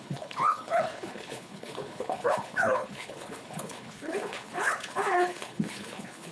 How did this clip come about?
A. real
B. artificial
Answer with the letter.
B